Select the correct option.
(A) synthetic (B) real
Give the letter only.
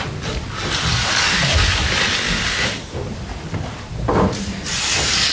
B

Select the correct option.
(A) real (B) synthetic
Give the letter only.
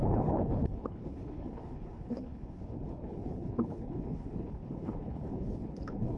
B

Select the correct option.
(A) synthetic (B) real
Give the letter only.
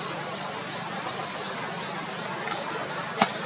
B